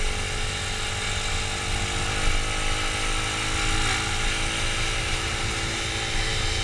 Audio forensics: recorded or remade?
recorded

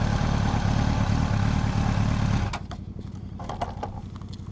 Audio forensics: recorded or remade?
recorded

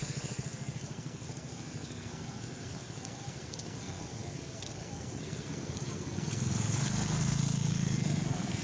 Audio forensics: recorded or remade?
remade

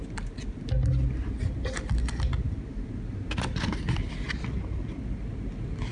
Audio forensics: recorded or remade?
recorded